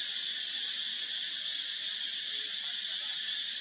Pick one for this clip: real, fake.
real